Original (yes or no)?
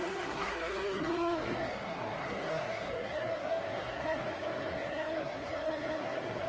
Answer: no